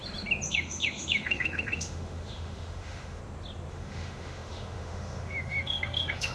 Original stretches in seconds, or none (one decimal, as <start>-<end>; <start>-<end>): 0.0-0.5; 3.2-3.7